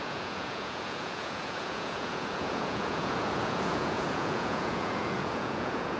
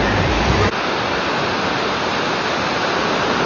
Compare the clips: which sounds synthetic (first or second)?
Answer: first